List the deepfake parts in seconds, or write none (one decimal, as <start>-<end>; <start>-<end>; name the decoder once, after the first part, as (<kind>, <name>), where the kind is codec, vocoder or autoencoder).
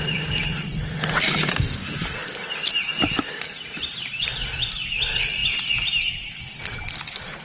0.0-5.4 (vocoder, BigVGAN v2); 6.1-7.4